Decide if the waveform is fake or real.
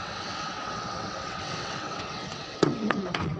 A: fake